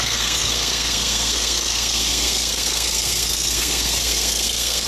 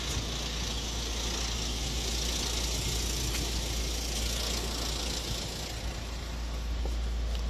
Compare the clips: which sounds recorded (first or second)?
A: second